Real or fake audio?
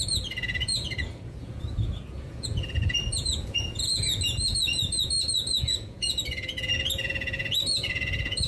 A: fake